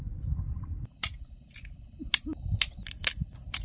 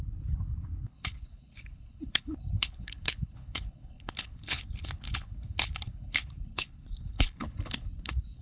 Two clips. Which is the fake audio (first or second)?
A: second